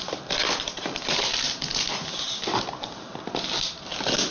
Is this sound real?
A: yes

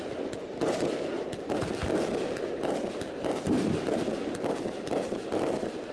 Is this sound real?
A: yes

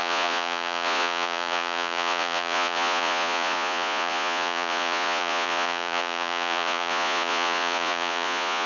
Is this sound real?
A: no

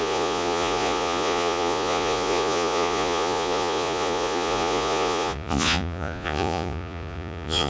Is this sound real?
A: no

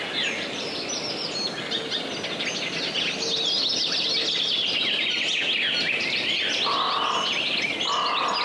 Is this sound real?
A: yes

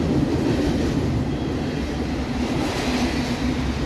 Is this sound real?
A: yes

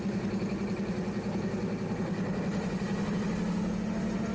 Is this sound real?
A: yes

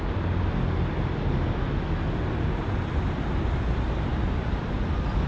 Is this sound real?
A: yes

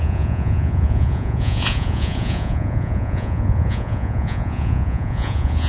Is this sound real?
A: no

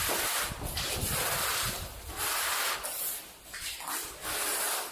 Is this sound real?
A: yes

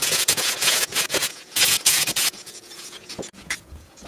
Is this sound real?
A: no